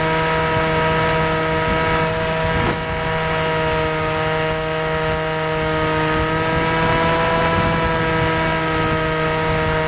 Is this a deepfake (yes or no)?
no